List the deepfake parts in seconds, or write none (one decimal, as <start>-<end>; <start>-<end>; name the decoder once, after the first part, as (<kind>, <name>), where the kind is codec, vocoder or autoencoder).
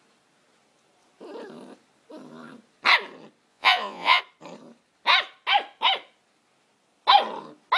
3.5-4.2 (vocoder, Vocos)